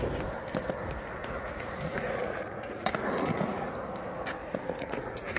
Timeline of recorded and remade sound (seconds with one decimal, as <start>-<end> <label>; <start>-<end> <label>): 0.0-1.2 recorded; 1.2-3.7 remade; 3.7-4.4 recorded; 4.4-5.4 remade